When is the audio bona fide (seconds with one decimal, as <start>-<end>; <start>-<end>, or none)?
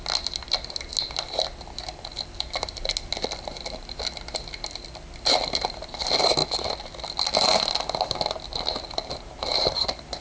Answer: 0.0-10.2